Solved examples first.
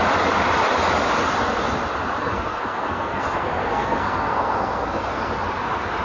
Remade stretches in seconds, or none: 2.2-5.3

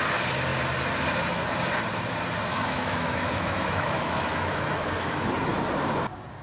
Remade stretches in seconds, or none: 2.5-5.3

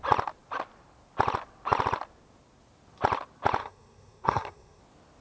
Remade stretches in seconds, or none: 3.6-4.8

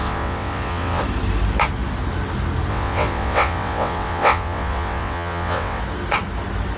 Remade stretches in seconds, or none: 0.0-1.0; 2.7-5.8

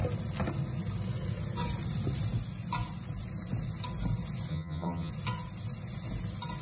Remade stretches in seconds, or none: 4.5-5.1

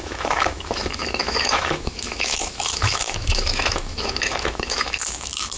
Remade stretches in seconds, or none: 0.0-5.6